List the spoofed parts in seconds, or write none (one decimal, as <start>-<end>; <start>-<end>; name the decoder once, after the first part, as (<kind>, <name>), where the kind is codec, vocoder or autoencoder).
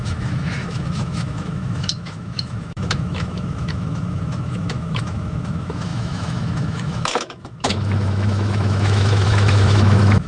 0.0-10.3 (autoencoder, DAC-VAE)